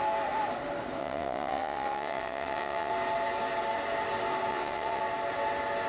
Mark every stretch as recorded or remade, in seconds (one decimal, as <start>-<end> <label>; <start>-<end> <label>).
0.0-1.0 recorded; 1.0-2.9 remade; 2.9-4.5 recorded; 4.5-5.0 remade; 5.0-5.9 recorded